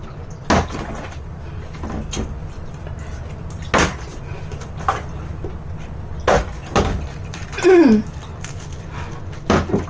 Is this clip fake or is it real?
real